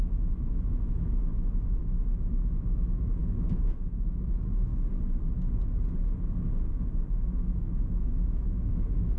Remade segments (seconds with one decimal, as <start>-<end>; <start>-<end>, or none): 0.0-1.8; 2.5-4.7; 6.7-9.2